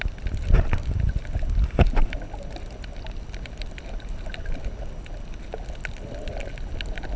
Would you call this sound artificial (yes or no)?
no